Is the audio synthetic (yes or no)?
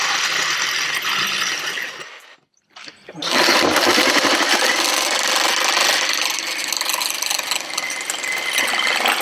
no